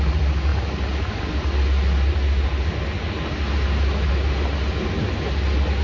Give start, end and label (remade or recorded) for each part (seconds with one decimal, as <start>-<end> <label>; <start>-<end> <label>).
0.0-5.8 recorded